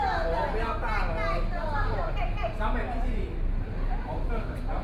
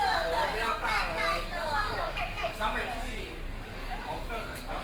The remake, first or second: second